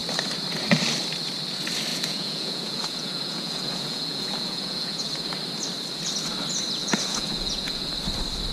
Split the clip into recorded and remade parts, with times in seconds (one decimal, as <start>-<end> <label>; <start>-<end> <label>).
0.0-1.9 recorded; 1.9-5.1 remade; 5.1-6.8 recorded; 6.8-7.9 remade; 7.9-8.5 recorded